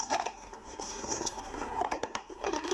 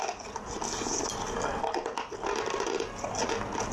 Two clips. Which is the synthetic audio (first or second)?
first